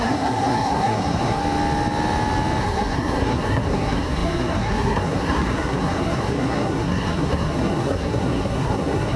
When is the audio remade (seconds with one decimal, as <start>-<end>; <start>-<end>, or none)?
0.0-1.4; 2.6-9.2

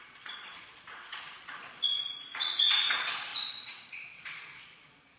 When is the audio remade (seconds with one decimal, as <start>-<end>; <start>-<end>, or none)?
0.0-5.2

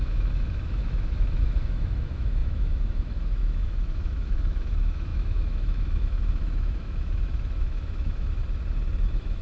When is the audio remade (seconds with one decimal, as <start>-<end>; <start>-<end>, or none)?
0.0-8.4; 9.0-9.4

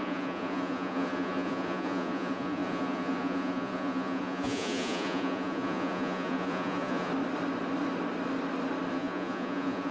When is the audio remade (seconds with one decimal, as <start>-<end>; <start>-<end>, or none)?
0.0-7.1; 8.9-9.9

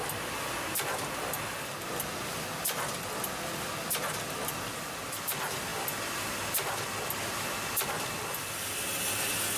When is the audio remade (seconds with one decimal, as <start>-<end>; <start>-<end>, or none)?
none